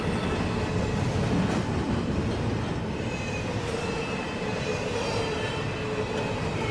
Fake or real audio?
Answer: real